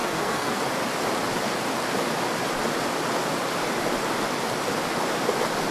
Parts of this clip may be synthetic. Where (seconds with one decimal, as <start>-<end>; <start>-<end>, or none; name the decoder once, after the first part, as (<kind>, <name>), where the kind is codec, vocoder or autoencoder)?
0.0-0.6 (codec, SNAC)